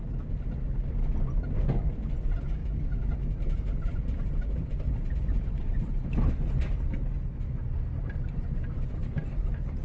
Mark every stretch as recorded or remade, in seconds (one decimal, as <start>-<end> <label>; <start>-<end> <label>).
0.0-2.6 recorded; 2.6-6.3 remade; 6.3-9.8 recorded